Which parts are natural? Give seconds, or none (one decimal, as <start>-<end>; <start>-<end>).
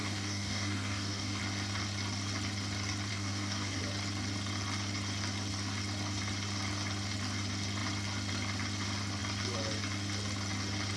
1.4-3.1; 3.8-11.0